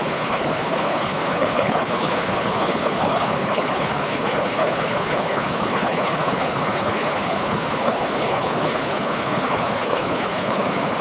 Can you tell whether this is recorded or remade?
remade